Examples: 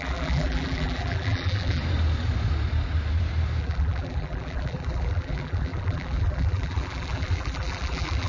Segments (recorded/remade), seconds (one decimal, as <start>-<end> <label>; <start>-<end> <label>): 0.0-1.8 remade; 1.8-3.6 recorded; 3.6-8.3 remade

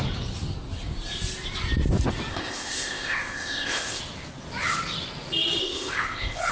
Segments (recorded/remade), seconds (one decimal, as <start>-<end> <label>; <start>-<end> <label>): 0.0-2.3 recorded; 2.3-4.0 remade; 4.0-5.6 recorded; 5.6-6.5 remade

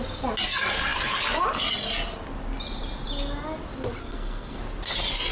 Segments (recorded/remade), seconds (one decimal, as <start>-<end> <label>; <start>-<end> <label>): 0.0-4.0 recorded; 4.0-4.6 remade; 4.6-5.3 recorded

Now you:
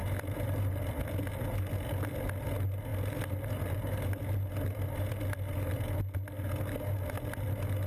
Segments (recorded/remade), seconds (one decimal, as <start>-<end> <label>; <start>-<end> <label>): 0.0-1.0 remade; 1.0-7.9 recorded